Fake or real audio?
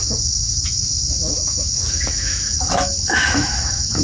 fake